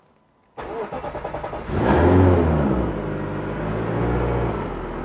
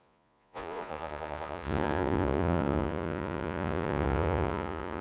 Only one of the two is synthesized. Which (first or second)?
second